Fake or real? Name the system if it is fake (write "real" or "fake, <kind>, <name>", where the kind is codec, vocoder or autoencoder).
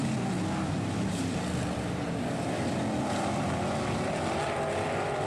real